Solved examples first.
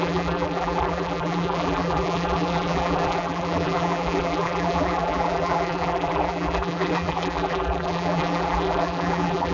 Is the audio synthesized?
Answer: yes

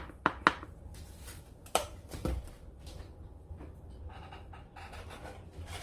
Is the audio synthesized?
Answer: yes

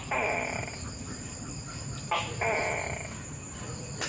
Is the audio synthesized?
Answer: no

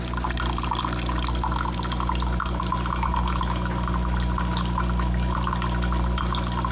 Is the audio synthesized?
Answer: no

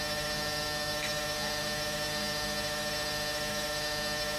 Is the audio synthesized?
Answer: yes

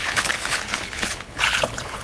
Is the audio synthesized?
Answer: yes